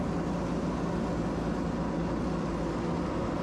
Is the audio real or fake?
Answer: real